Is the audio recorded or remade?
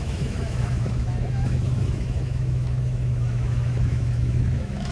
remade